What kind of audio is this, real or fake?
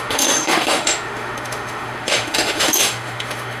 fake